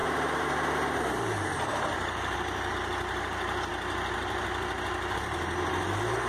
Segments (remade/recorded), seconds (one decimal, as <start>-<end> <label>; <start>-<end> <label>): 0.0-2.7 remade; 2.7-6.3 recorded